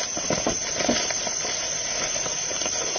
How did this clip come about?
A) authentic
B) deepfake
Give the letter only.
A